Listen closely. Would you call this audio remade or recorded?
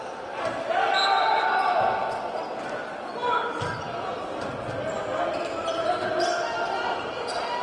recorded